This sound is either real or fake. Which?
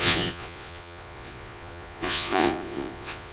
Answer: fake